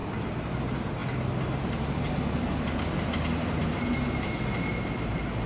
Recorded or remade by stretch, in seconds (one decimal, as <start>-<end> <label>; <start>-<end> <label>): 0.0-5.5 recorded